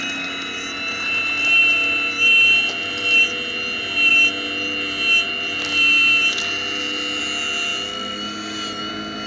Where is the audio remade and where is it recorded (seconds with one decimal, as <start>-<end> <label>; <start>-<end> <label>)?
0.0-9.3 recorded